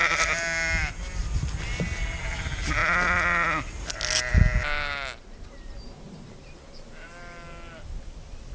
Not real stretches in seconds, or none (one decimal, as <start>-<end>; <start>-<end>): none